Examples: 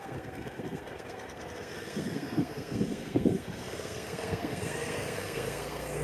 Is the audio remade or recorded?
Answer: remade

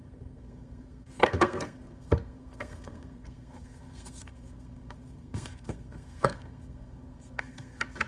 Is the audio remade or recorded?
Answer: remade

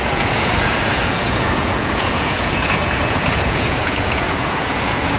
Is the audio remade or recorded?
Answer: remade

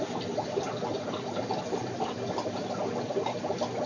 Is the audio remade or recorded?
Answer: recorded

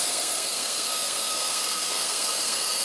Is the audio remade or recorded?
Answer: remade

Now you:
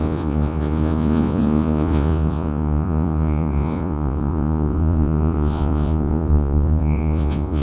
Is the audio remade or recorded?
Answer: remade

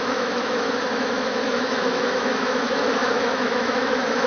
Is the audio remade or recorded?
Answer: remade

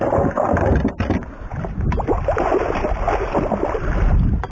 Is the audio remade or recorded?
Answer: recorded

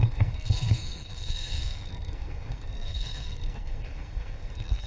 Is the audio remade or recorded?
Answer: remade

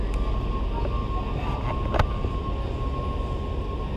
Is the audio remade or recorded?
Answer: recorded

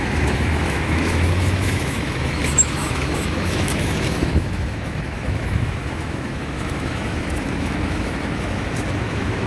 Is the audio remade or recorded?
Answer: remade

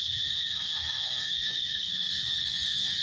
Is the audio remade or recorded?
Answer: remade